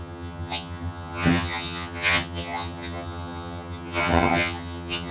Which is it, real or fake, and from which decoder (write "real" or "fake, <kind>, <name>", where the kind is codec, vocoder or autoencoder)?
fake, vocoder, HiFi-GAN